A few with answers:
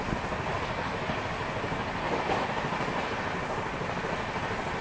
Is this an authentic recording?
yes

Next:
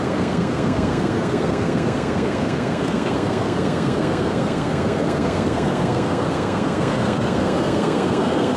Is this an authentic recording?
no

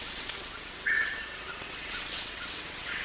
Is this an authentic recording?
no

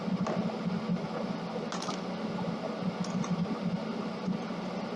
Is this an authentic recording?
yes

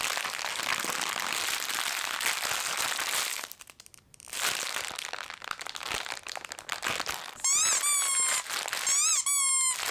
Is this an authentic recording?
yes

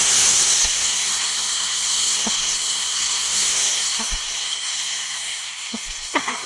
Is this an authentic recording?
no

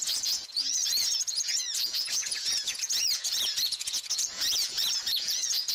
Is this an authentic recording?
no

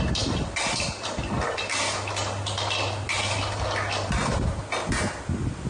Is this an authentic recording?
yes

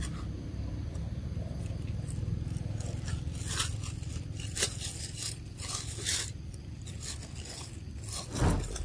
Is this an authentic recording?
yes